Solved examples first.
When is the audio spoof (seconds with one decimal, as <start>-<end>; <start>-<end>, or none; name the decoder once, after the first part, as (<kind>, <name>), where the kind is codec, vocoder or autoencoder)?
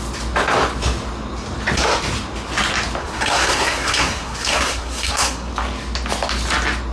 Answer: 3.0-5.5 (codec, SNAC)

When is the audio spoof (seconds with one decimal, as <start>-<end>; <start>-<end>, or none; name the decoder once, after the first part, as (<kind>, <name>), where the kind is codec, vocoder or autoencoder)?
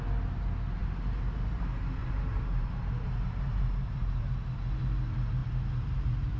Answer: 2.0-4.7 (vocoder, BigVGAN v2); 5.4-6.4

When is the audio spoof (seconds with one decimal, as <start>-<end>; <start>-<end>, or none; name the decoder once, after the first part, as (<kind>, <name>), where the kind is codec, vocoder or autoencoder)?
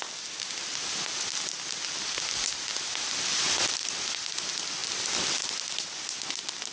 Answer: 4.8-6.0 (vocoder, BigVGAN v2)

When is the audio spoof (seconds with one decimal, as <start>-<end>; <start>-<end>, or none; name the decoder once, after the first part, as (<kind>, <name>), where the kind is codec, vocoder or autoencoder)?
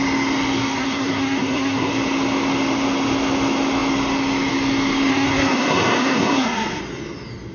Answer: 0.7-1.9 (codec, SNAC); 5.1-6.8